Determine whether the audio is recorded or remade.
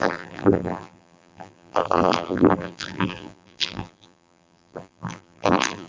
remade